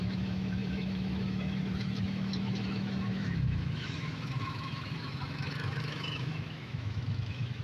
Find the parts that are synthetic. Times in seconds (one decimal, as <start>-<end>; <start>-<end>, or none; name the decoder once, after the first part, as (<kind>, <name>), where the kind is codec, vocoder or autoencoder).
0.0-7.6 (autoencoder, DAC-VAE)